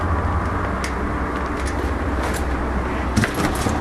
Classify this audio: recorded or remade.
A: recorded